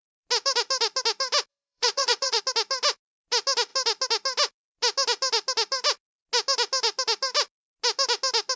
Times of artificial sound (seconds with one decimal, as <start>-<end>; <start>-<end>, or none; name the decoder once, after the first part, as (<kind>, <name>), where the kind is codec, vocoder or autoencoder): 1.5-2.4 (vocoder, Vocos)